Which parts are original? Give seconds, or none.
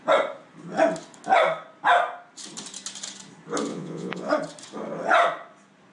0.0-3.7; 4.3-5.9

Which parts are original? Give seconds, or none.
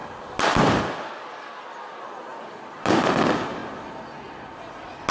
0.8-5.1